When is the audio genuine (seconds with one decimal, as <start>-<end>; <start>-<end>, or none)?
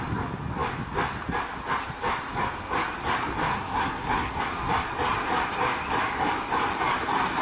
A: 0.0-3.5; 4.4-7.4